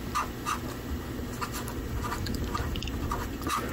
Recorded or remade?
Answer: recorded